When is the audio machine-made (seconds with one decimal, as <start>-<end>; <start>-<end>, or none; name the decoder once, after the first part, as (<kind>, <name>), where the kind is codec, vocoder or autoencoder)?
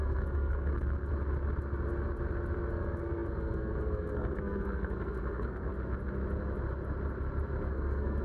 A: 0.0-1.1 (codec, SNAC); 2.7-5.7; 7.7-8.2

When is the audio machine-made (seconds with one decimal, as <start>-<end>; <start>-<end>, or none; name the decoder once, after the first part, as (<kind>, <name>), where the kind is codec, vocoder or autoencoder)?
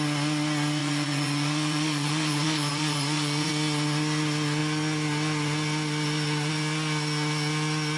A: 0.8-3.5 (vocoder, Vocos)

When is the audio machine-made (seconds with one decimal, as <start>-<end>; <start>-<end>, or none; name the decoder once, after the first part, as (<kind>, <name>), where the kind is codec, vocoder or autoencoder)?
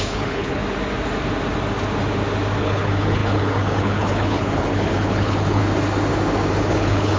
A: 0.0-0.6 (codec, HILCodec); 2.6-5.6; 6.5-7.2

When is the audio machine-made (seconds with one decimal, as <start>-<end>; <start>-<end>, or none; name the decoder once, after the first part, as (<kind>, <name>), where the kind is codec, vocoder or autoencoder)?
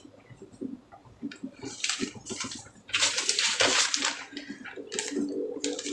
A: 1.0-4.5 (vocoder, BigVGAN v2)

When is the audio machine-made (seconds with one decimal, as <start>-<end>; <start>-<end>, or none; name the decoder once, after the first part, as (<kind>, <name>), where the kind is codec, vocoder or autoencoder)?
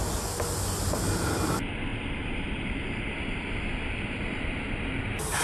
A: none